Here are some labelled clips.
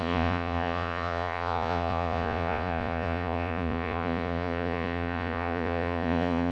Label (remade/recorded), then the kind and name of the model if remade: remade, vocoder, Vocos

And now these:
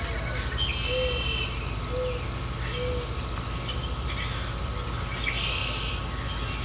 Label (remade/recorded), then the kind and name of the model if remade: recorded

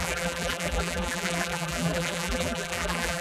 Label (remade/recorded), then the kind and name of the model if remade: remade, vocoder, BigVGAN v2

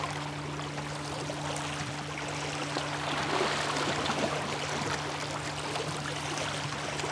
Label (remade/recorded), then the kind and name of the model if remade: recorded